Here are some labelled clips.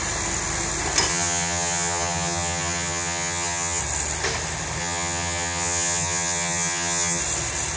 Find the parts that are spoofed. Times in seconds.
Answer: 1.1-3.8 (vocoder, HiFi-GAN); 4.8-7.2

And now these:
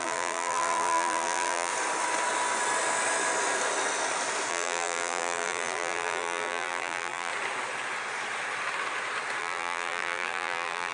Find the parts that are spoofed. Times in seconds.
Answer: 0.0-1.7 (vocoder, BigVGAN v2); 4.5-7.3; 9.4-10.9

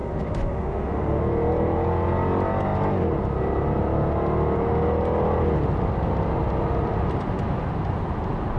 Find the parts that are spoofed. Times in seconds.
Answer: 0.0-1.2 (autoencoder, DAC-VAE)

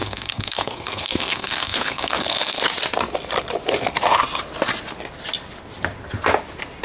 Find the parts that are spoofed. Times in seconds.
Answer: 0.0-2.6 (codec, SNAC)

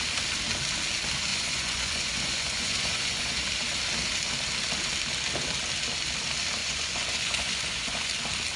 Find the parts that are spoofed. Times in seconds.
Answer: 1.3-3.4 (vocoder, Vocos); 6.6-8.1

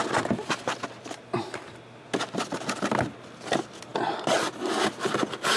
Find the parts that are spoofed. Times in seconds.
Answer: none

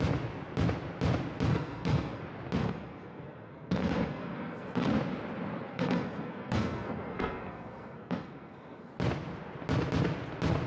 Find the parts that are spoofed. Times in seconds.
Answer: 1.5-2.2 (codec, SNAC); 2.6-4.9; 5.7-8.9